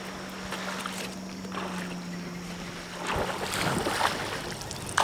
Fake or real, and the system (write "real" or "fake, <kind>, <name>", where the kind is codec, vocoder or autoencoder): real